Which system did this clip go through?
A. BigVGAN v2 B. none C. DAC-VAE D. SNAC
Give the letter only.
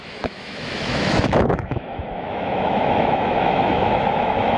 C